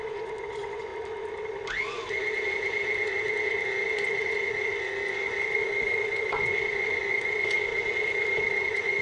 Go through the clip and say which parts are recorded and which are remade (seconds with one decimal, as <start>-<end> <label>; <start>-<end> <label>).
0.0-0.9 remade; 0.9-3.9 recorded; 3.9-7.7 remade; 7.7-8.6 recorded; 8.6-9.0 remade